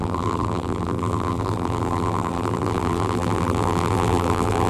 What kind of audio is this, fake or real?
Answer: fake